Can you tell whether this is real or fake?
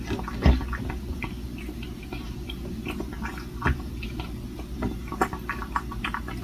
real